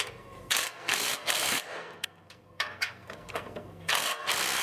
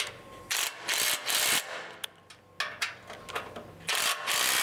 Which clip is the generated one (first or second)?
first